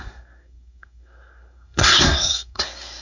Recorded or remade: remade